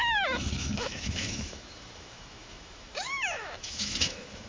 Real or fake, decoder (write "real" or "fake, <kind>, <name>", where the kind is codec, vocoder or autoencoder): fake, autoencoder, DAC-VAE